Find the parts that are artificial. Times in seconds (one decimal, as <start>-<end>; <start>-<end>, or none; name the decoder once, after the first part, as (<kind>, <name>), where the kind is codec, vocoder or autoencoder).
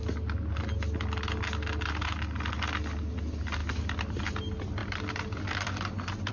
none